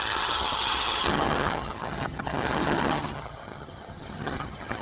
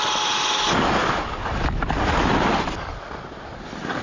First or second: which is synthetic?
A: first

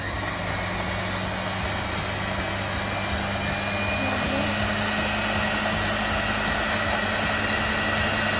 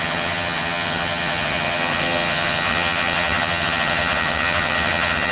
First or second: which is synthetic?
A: second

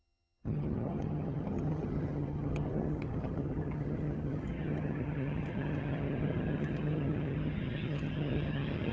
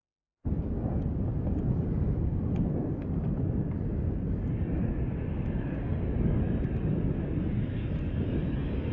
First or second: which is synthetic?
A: first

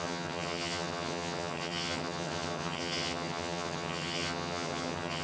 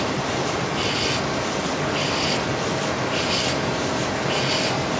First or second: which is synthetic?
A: first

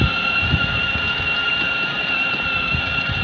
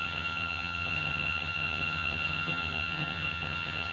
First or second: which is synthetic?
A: second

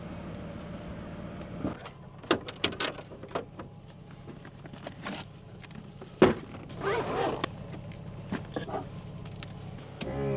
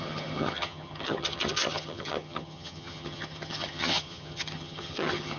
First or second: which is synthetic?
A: second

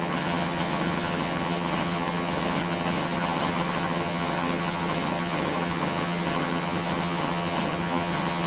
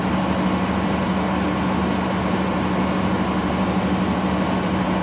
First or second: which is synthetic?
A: first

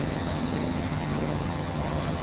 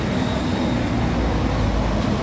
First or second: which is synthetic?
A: first